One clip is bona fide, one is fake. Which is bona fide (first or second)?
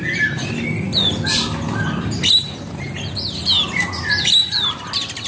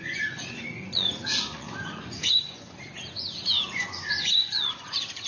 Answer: first